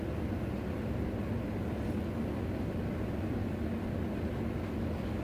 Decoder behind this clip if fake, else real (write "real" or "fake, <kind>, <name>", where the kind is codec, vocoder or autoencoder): real